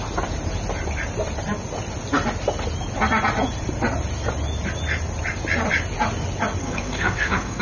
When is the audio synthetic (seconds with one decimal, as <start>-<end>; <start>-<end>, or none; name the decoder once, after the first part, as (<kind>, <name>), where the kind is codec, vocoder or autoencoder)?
6.6-7.6 (codec, SNAC)